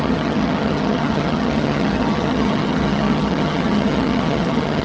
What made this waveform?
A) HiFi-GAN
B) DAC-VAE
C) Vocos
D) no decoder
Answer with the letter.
A